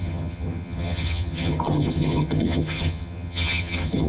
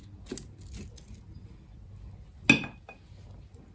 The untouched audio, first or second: second